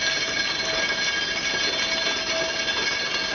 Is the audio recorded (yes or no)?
yes